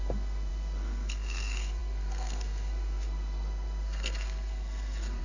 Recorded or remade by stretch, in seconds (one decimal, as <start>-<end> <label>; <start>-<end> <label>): 0.0-5.2 remade